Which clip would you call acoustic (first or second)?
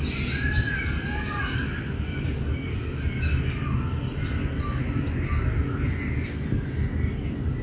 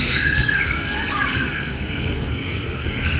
first